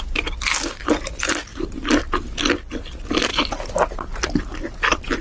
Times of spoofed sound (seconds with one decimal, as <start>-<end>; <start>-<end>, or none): 1.5-2.0

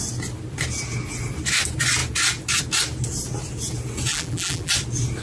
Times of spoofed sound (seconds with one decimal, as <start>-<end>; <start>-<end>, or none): 4.1-4.7